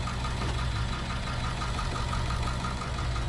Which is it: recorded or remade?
remade